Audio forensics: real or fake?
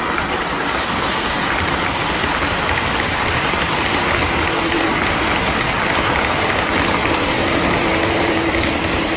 fake